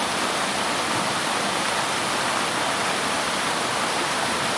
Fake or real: fake